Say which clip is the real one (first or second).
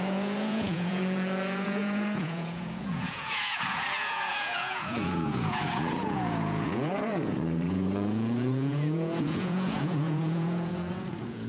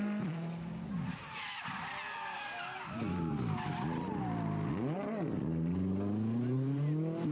second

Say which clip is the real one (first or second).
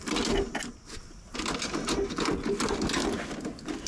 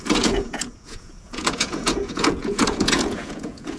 first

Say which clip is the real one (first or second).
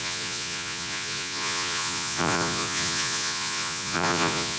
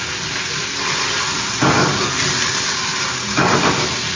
second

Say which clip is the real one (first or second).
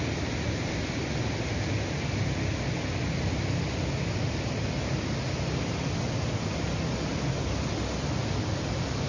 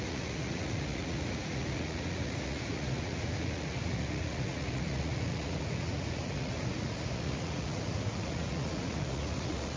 first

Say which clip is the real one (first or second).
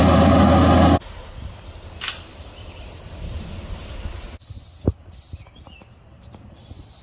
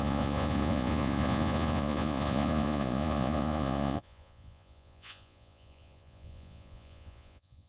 first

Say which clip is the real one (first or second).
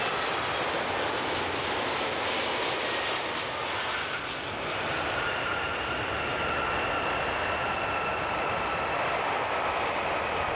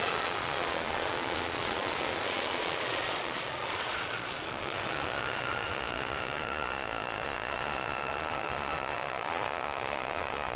first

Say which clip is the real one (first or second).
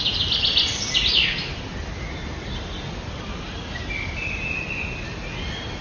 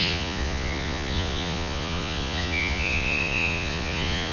first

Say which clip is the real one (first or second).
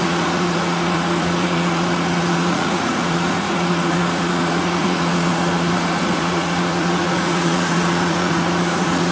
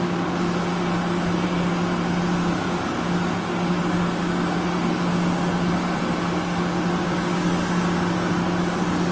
second